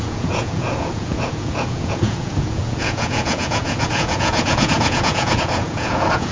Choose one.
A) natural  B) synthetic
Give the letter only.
B